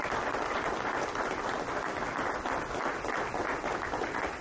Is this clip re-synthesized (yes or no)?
no